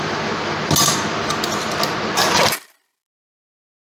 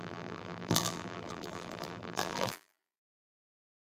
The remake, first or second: second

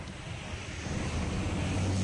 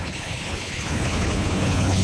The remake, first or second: second